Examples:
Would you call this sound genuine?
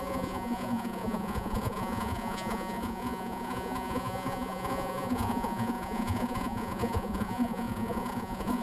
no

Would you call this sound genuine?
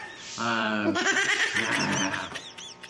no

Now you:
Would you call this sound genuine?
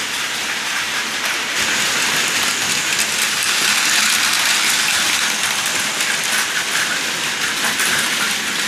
yes